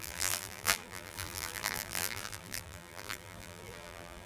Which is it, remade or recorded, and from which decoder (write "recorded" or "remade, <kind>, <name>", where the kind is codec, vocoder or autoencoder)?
remade, vocoder, BigVGAN v2